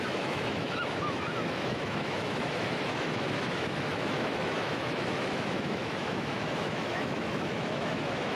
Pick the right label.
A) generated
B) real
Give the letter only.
A